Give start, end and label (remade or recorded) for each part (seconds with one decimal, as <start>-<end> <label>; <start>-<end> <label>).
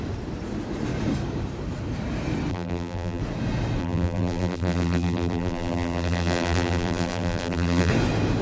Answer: 0.0-2.5 recorded; 2.5-3.2 remade; 3.2-3.8 recorded; 3.8-7.9 remade; 7.9-8.4 recorded